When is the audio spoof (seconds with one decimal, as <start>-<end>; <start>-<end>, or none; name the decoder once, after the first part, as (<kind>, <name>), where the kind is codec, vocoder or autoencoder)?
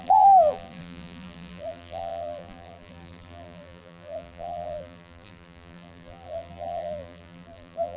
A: 0.0-8.0 (vocoder, BigVGAN v2)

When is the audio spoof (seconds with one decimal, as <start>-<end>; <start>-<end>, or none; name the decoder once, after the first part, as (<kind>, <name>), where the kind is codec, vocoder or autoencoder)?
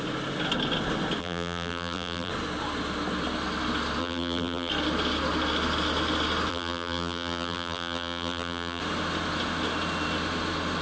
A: 1.2-2.3 (vocoder, BigVGAN v2); 4.0-4.7; 6.5-8.8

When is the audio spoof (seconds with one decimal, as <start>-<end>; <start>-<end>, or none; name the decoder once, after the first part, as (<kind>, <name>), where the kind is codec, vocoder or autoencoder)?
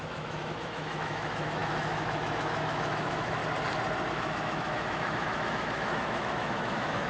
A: 0.0-3.4 (autoencoder, DAC-VAE); 4.1-7.1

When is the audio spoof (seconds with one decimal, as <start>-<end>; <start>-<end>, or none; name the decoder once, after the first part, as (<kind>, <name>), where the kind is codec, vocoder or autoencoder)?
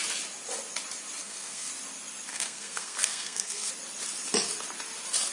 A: 1.2-1.7 (codec, SNAC); 2.3-3.7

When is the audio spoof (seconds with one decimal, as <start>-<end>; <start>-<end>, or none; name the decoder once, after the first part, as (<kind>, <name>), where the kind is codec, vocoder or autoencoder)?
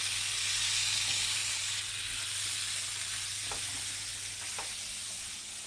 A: none